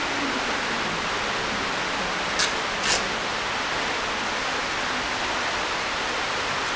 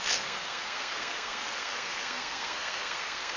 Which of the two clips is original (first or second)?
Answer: first